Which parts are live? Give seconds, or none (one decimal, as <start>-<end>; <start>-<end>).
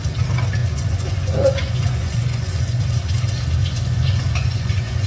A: 0.0-0.6; 2.8-3.6